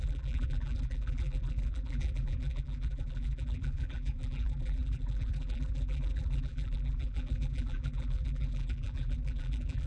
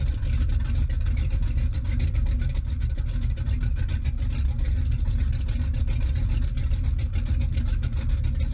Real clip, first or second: second